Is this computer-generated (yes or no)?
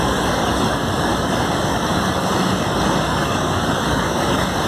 yes